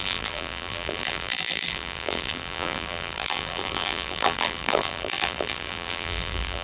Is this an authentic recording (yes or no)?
no